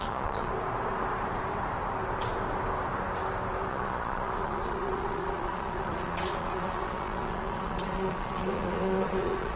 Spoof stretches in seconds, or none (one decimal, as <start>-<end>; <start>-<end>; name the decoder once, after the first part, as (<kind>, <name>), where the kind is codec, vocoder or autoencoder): 0.0-0.5 (vocoder, Vocos); 3.7-9.6